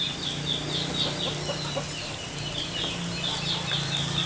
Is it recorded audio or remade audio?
recorded